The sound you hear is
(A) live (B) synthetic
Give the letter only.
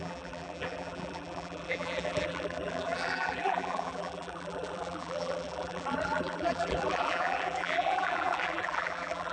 B